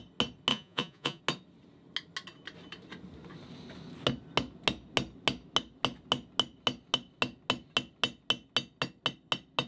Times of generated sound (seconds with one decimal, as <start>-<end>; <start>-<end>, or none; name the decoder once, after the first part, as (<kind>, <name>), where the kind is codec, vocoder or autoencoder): 0.5-1.2 (vocoder, Vocos)